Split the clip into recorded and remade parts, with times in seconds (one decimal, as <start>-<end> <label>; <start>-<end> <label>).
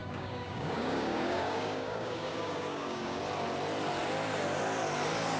0.0-3.2 remade; 3.2-5.4 recorded